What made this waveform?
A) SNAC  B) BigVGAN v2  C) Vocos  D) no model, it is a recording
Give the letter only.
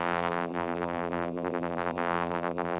B